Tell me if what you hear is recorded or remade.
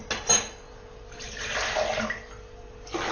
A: recorded